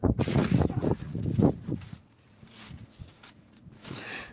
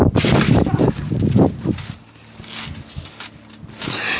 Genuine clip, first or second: second